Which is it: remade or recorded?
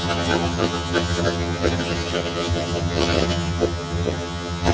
remade